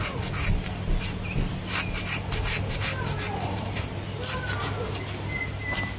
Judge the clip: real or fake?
real